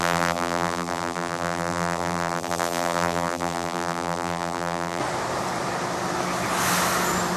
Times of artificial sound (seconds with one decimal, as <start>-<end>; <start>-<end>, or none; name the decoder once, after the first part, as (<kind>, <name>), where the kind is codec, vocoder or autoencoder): 0.0-5.0 (vocoder, BigVGAN v2)